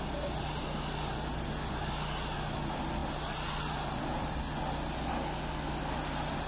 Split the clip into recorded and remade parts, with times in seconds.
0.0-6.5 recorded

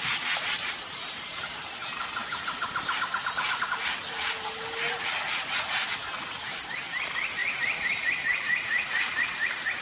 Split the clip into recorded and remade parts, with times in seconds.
0.0-9.8 recorded

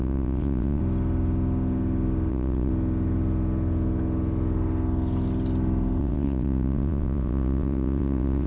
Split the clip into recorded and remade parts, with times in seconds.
0.0-0.8 remade; 0.8-2.3 recorded; 2.3-2.7 remade; 2.7-6.0 recorded; 6.0-8.5 remade

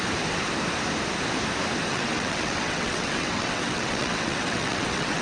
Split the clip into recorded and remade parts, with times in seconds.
0.0-1.9 recorded; 1.9-5.2 remade

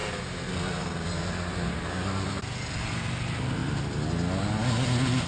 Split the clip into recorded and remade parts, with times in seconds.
0.0-5.3 recorded